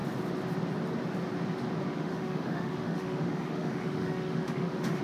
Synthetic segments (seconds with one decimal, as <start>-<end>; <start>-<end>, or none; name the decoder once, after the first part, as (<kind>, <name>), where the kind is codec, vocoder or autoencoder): 1.9-5.0 (autoencoder, DAC-VAE)